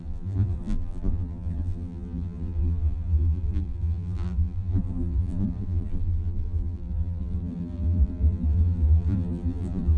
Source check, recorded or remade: remade